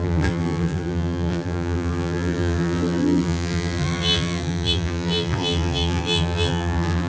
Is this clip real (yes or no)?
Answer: no